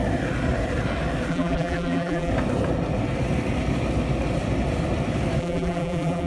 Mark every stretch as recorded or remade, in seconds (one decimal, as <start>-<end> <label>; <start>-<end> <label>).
0.0-1.3 recorded; 1.3-2.3 remade; 2.3-5.4 recorded; 5.4-6.3 remade

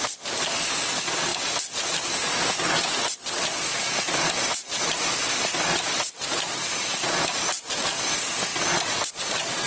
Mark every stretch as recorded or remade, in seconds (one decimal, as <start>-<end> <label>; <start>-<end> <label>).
0.0-9.7 recorded

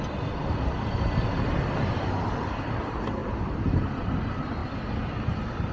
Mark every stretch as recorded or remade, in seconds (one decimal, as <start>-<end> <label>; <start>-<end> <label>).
0.0-0.4 recorded; 0.4-1.5 remade; 1.5-3.2 recorded; 3.2-3.9 remade; 3.9-4.6 recorded; 4.6-5.7 remade

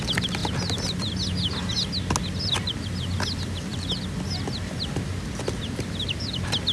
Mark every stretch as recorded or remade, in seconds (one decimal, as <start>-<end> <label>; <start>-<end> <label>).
0.0-0.4 remade; 0.4-2.2 recorded; 2.2-3.7 remade; 3.7-5.6 recorded; 5.6-6.7 remade

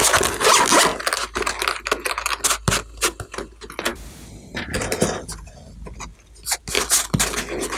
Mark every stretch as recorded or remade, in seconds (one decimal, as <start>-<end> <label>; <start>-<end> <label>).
0.0-7.8 recorded